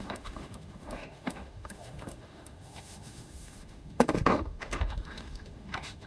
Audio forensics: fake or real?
fake